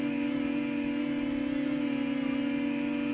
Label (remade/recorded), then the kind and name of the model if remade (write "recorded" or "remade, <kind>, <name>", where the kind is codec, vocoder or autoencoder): recorded